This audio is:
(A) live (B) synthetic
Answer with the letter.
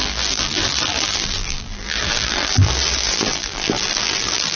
B